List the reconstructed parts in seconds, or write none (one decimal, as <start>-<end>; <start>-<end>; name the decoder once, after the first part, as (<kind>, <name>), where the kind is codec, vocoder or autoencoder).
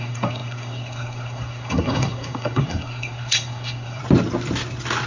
0.0-4.0 (codec, SNAC)